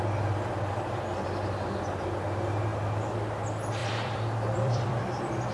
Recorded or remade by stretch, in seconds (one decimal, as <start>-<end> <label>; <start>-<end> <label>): 0.0-3.8 recorded; 3.8-5.0 remade; 5.0-5.5 recorded